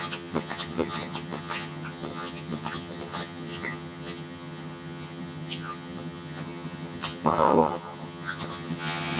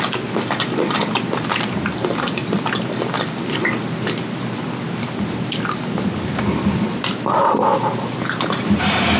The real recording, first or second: second